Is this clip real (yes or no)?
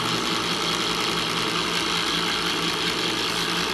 yes